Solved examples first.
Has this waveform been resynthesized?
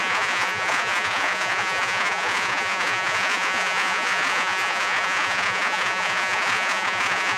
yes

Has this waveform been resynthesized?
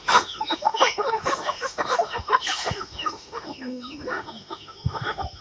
yes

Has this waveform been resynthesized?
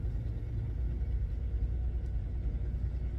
no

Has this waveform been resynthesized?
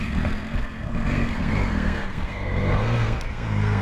yes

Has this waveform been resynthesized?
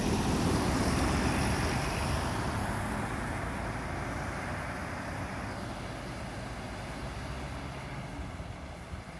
no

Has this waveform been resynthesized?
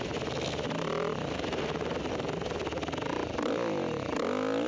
no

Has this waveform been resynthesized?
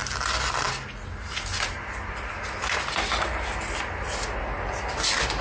no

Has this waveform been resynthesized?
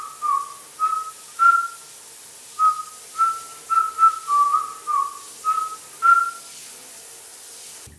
no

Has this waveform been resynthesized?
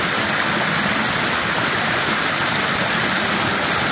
no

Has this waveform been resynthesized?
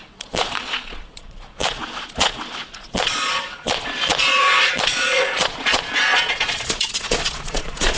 yes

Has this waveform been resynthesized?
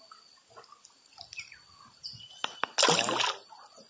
no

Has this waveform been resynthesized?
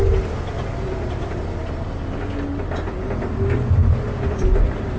no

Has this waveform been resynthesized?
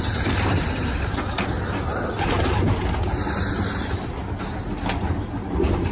no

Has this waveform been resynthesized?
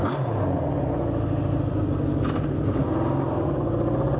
no